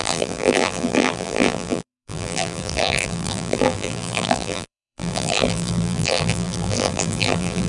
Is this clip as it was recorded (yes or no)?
no